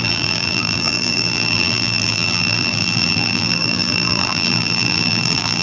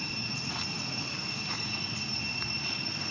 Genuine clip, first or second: second